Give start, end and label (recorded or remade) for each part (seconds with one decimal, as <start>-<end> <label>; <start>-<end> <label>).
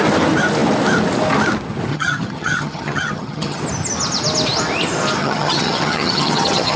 0.0-1.9 recorded; 1.9-3.6 remade; 3.6-5.2 recorded; 5.2-6.8 remade